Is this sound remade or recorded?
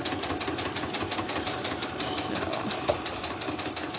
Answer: recorded